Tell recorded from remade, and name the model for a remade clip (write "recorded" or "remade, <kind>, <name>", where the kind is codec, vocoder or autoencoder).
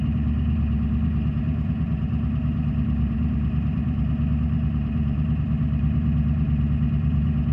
remade, vocoder, BigVGAN v2